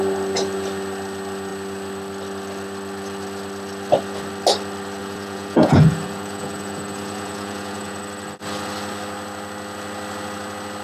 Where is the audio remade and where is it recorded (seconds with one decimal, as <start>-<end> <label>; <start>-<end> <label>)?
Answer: 0.0-5.0 recorded; 5.0-8.0 remade; 8.0-10.8 recorded